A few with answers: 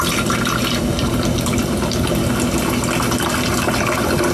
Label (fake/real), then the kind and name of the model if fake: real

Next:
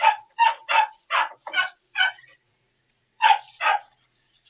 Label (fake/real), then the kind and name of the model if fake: fake, vocoder, Vocos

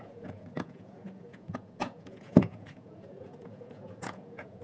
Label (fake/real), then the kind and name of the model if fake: fake, vocoder, Vocos